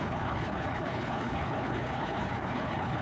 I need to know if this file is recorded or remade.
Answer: remade